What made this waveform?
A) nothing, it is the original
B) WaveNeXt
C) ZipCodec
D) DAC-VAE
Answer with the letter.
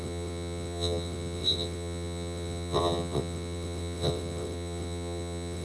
B